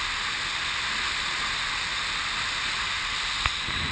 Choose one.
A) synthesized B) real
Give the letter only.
B